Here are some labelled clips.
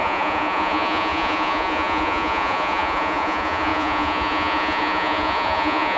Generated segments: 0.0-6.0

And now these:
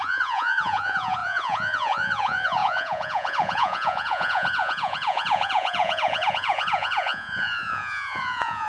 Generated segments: 0.0-8.7